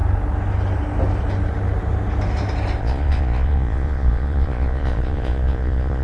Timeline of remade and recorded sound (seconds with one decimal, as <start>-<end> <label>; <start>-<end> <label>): 0.0-2.8 recorded; 2.8-6.0 remade